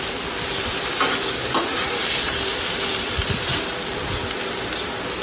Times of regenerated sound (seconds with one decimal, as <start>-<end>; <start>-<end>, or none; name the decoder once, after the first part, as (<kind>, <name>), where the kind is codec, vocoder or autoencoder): 1.4-2.2 (vocoder, BigVGAN v2); 2.9-3.9